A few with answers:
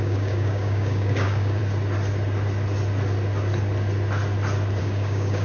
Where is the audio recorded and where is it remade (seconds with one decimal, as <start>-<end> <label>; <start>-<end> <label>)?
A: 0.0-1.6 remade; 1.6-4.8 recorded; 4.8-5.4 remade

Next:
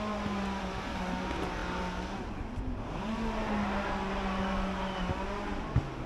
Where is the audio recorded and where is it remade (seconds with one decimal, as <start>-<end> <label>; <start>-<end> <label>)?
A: 0.0-6.1 recorded

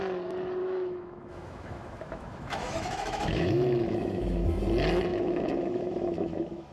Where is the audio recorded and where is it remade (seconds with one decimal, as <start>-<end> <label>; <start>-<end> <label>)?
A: 0.0-0.6 recorded; 0.6-4.6 remade; 4.6-5.1 recorded; 5.1-6.7 remade

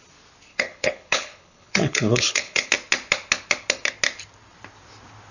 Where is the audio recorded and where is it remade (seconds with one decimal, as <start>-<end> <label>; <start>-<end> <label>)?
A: 0.0-0.5 recorded; 0.5-2.7 remade; 2.7-5.3 recorded

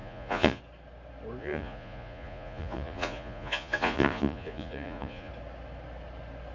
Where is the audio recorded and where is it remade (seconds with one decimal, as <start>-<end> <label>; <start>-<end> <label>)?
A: 0.0-0.6 remade; 0.6-1.4 recorded; 1.4-5.3 remade; 5.3-6.5 recorded

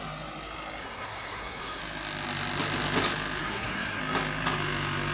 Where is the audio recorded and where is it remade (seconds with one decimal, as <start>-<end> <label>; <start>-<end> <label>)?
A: 0.0-0.8 recorded; 0.8-1.8 remade; 1.8-3.4 recorded; 3.4-4.0 remade; 4.0-5.1 recorded

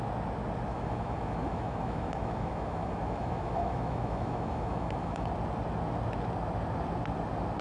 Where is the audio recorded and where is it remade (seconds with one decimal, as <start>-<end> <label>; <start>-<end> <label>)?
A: 0.0-0.7 recorded; 0.7-5.3 remade; 5.3-7.6 recorded